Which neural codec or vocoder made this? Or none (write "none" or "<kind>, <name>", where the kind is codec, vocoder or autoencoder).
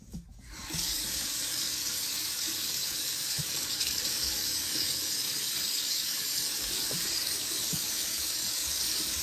codec, DAC